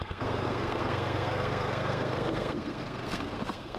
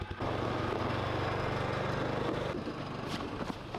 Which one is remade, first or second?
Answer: first